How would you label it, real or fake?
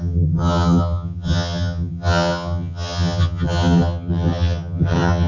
fake